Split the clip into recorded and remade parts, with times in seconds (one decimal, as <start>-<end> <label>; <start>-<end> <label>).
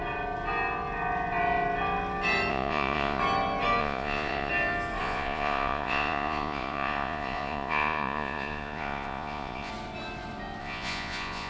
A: 0.0-2.5 recorded; 2.5-3.2 remade; 3.2-3.8 recorded; 3.8-4.5 remade; 4.5-5.0 recorded; 5.0-9.7 remade; 9.7-10.6 recorded; 10.6-11.5 remade